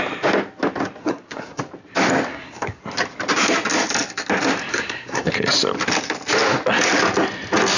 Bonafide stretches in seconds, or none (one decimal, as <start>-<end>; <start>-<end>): 0.0-1.0; 1.6-2.3; 2.8-4.7; 5.3-7.8